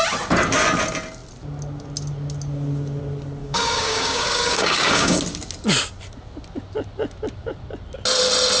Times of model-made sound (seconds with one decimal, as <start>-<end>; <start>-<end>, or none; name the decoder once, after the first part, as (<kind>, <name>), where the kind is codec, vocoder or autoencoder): 3.4-5.2 (codec, DAC)